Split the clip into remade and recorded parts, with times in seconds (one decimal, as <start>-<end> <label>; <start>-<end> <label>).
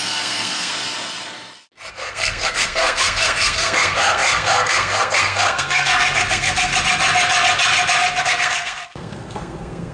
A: 0.0-0.7 remade; 0.7-1.9 recorded; 1.9-6.7 remade; 6.7-8.2 recorded; 8.2-9.9 remade